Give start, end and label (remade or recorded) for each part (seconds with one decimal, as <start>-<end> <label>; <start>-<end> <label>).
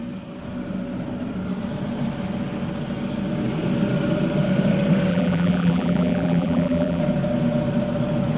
0.0-5.1 recorded; 5.1-7.0 remade; 7.0-8.4 recorded